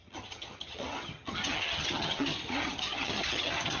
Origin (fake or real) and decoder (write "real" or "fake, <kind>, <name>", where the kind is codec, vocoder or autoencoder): fake, vocoder, HiFi-GAN